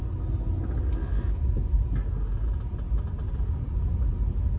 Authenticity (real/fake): real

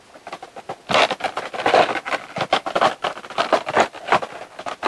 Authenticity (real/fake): real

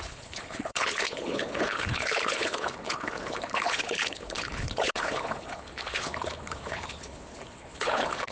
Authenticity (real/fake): fake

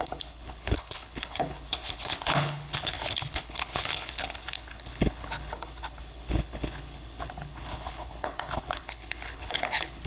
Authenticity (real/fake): fake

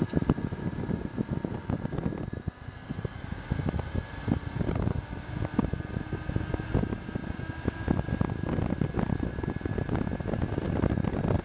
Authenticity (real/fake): real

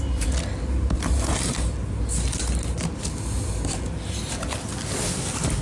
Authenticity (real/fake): real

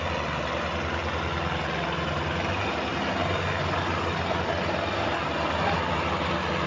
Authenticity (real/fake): real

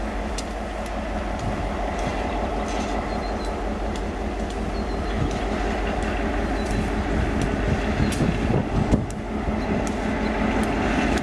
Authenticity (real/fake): real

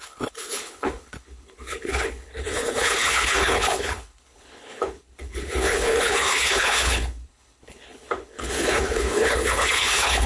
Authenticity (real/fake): fake